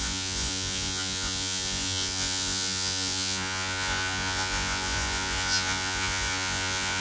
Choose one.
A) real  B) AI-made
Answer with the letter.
B